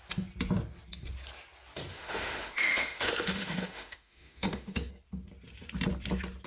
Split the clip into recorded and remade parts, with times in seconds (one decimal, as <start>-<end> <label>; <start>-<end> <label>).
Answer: 0.0-1.9 recorded; 1.9-4.9 remade; 4.9-6.5 recorded